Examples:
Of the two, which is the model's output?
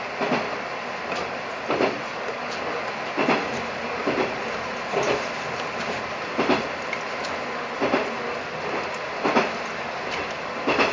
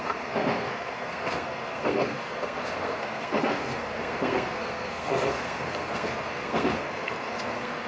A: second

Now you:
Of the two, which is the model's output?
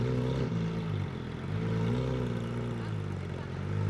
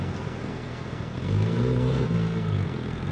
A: second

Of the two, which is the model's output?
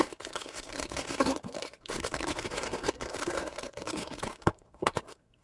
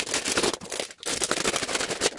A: first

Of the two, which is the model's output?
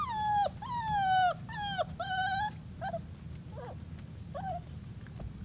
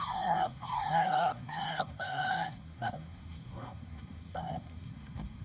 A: second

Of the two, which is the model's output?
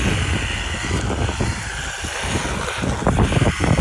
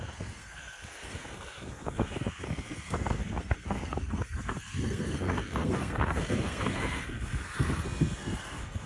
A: second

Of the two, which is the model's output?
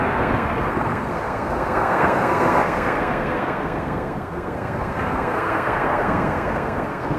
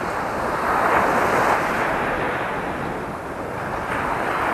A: first